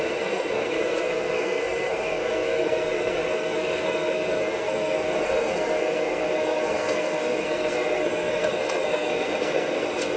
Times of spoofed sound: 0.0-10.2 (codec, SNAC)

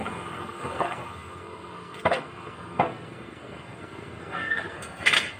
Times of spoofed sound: 0.0-5.4 (codec, SNAC)

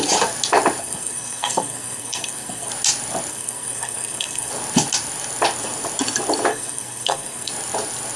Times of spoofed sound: 0.8-2.7 (codec, SNAC); 3.3-4.5; 6.5-7.5

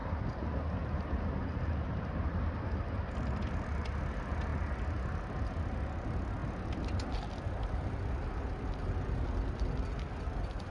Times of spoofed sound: none

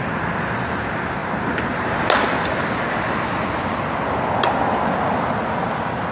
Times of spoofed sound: none

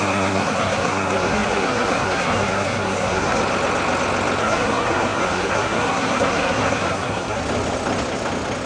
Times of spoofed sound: 0.0-3.4 (codec, SNAC); 4.4-7.4